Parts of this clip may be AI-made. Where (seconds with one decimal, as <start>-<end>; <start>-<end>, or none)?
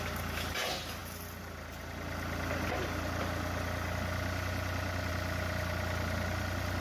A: none